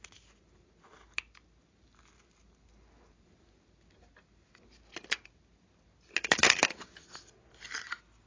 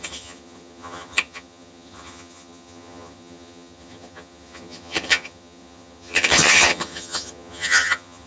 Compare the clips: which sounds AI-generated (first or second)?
second